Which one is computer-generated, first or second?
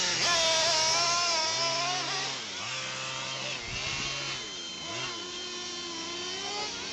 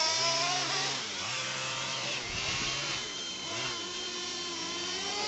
second